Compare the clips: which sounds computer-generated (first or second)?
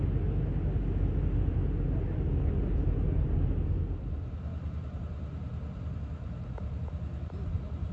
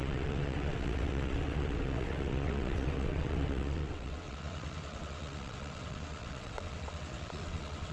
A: second